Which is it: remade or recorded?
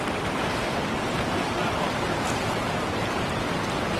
remade